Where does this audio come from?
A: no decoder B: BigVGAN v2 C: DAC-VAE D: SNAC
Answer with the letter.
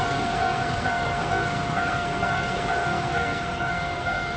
D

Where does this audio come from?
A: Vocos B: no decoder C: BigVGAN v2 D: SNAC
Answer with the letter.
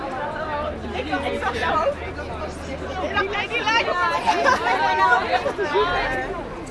B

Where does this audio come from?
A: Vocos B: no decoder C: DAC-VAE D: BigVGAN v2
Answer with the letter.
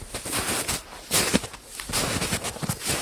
D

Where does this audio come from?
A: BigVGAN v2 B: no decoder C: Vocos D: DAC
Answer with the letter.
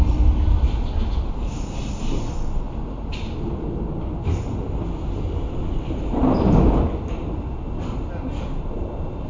B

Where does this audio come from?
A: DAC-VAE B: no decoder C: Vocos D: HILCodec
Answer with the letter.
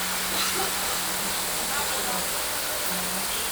B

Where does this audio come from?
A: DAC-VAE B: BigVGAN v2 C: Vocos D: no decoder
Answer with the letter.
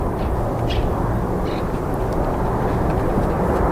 D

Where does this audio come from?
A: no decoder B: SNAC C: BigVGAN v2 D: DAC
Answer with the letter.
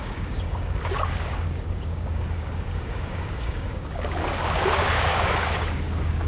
D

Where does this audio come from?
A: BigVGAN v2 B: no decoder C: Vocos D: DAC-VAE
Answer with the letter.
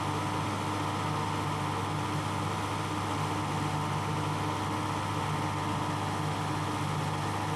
B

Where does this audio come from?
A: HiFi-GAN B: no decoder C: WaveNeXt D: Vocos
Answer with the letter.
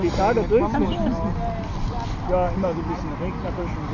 B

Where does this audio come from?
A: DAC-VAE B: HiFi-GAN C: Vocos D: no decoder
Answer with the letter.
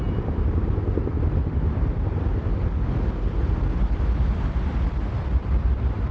D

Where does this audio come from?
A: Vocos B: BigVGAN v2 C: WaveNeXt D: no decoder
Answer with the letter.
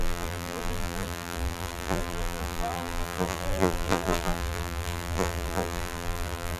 B